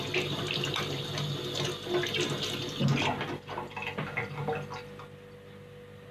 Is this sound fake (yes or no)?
no